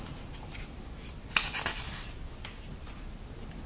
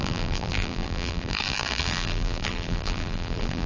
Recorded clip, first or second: first